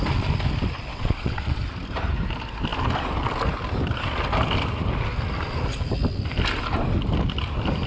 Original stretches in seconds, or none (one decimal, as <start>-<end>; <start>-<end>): 0.0-0.9; 1.6-7.9